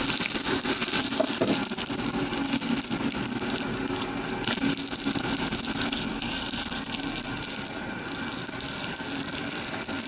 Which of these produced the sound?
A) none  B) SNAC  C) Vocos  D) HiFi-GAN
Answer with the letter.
A